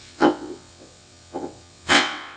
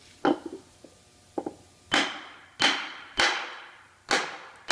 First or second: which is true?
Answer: second